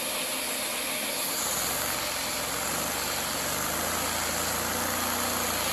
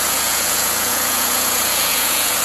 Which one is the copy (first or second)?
second